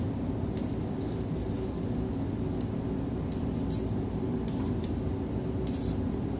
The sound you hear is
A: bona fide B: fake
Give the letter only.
A